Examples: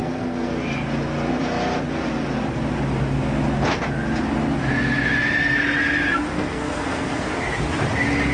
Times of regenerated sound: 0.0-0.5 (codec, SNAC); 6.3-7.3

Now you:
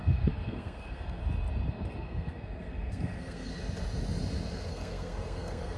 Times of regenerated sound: 0.0-1.2 (codec, SNAC); 1.7-3.5; 4.7-5.8